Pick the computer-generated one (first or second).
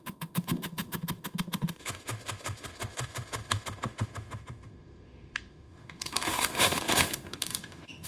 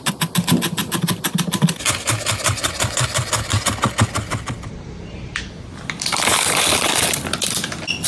first